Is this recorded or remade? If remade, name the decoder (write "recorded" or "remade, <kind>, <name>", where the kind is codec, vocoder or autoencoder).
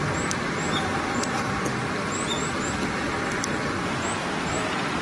remade, vocoder, BigVGAN v2